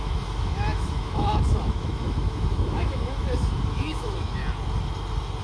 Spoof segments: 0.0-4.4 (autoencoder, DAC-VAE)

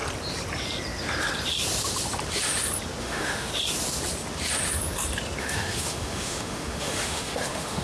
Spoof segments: 3.0-3.5 (autoencoder, DAC-VAE); 5.4-7.8

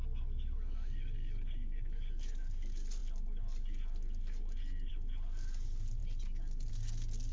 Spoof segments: none